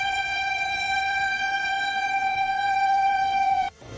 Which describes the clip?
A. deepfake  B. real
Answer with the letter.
A